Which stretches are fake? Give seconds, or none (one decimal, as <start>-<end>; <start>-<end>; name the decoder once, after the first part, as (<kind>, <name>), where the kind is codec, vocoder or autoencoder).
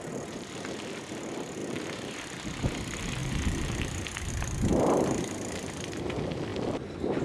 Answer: 1.6-2.6 (vocoder, BigVGAN v2); 3.2-4.3; 4.7-5.2